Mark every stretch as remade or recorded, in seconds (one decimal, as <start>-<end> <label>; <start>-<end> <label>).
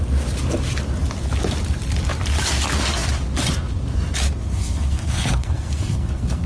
0.0-4.4 recorded; 4.4-6.5 remade